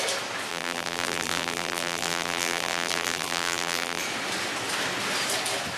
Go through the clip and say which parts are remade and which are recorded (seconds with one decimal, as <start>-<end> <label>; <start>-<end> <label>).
0.0-0.5 recorded; 0.5-4.0 remade; 4.0-5.8 recorded